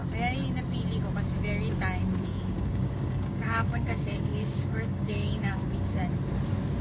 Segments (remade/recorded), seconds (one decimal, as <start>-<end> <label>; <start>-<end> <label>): 0.0-2.2 recorded; 2.2-6.0 remade; 6.0-6.8 recorded